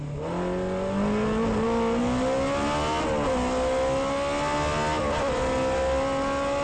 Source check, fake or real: real